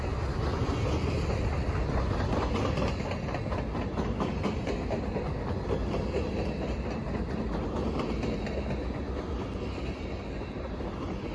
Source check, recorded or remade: recorded